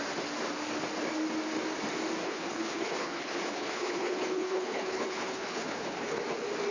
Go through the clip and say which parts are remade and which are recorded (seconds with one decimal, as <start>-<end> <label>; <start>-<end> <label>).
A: 0.0-2.2 recorded; 2.2-6.2 remade; 6.2-6.7 recorded